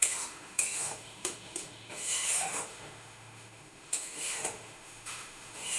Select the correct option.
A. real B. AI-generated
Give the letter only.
B